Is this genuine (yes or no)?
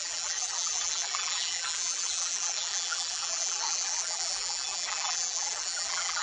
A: no